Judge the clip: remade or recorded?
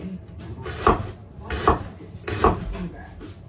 recorded